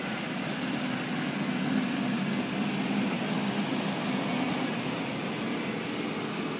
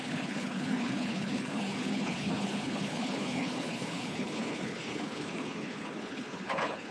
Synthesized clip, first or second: second